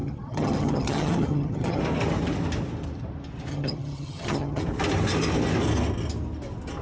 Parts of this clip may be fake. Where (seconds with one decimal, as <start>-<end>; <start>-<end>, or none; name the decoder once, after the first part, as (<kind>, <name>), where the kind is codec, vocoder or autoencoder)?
0.0-1.8 (vocoder, HiFi-GAN); 3.5-4.6